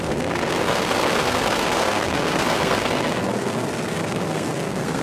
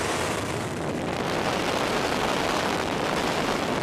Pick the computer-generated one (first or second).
first